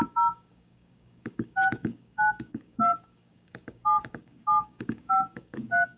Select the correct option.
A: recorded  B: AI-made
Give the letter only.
B